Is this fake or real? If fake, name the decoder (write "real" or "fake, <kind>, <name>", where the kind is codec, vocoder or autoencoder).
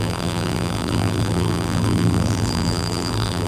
fake, vocoder, BigVGAN v2